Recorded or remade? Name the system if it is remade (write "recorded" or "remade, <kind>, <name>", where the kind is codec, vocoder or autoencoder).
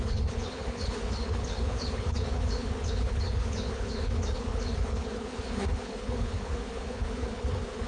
remade, codec, HILCodec